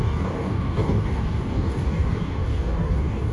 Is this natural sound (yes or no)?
no